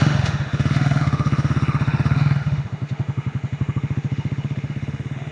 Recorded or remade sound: remade